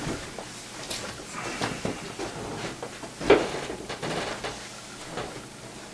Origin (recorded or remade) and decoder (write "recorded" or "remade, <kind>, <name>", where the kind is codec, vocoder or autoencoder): recorded